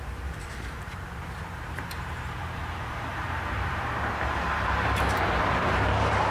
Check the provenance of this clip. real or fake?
fake